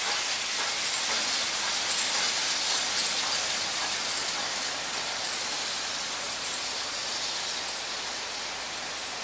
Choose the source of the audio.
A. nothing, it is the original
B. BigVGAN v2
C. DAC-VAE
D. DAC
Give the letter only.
A